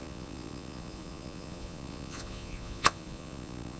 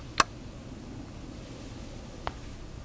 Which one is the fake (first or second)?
first